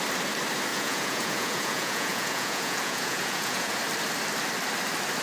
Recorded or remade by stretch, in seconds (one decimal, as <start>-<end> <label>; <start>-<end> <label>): 0.0-0.7 recorded; 0.7-3.8 remade; 3.8-5.2 recorded